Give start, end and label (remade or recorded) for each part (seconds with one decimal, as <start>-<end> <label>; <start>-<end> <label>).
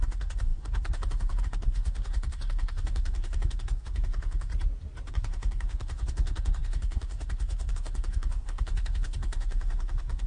0.0-4.5 remade; 4.5-5.1 recorded; 5.1-10.3 remade